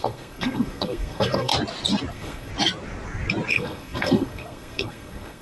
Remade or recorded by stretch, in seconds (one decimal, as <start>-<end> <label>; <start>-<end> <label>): 0.0-1.5 remade; 1.5-2.1 recorded; 2.1-2.5 remade; 2.5-3.5 recorded; 3.5-5.4 remade